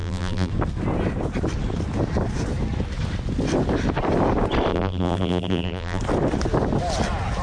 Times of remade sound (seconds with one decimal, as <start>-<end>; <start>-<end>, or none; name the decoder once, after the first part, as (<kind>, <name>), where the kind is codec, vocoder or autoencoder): 0.0-0.5 (vocoder, BigVGAN v2); 4.7-6.0